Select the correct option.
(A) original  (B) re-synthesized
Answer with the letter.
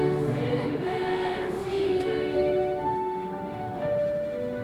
B